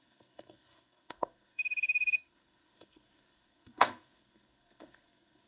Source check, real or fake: fake